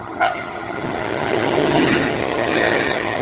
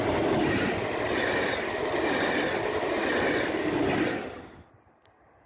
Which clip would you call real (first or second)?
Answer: second